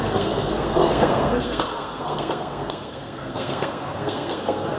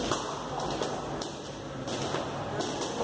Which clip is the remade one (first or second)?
first